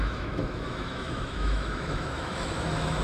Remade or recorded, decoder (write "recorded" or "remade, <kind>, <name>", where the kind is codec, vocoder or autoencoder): remade, autoencoder, DAC-VAE